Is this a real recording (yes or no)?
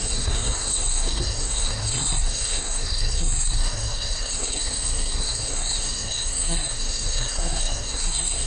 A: no